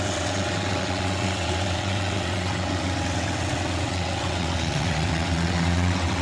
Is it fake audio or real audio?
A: fake